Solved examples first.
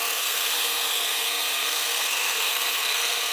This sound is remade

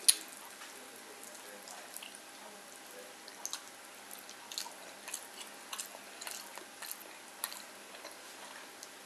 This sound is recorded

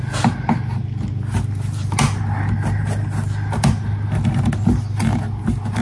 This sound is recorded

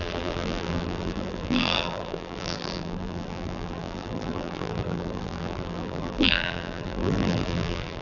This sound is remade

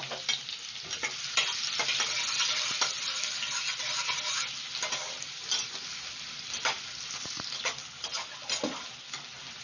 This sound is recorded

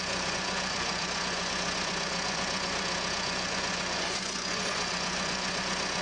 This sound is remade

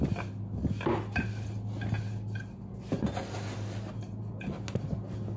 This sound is recorded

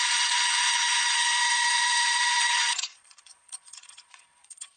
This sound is remade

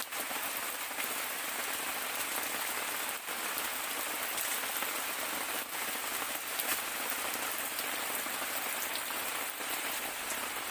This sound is recorded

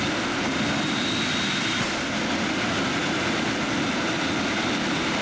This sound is recorded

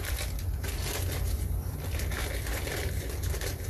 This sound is recorded